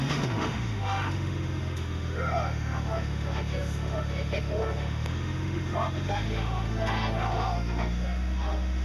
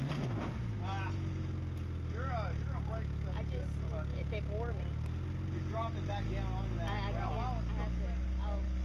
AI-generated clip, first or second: first